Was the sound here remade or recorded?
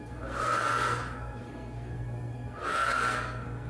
remade